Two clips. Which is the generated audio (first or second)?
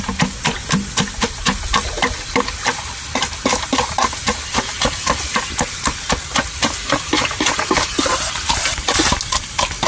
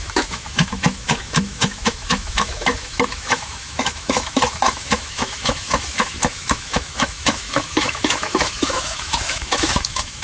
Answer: second